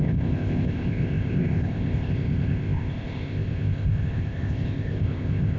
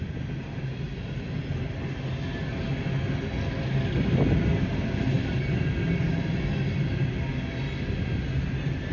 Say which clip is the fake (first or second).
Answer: first